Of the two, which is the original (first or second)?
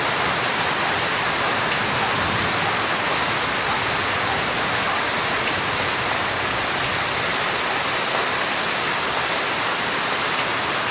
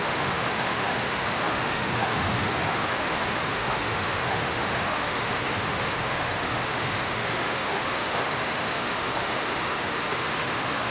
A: first